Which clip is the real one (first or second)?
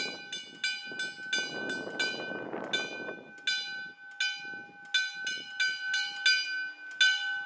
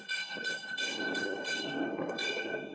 first